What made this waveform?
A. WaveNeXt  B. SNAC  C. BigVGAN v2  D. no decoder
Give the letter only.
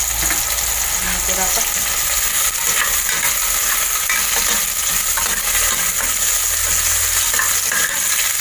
D